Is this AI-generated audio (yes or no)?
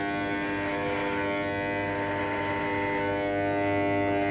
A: no